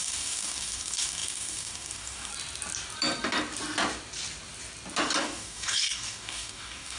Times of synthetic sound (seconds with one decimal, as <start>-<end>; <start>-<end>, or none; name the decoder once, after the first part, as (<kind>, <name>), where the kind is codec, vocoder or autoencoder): 0.0-2.3 (codec, DAC); 5.2-7.0